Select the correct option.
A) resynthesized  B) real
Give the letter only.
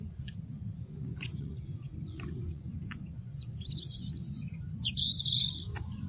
A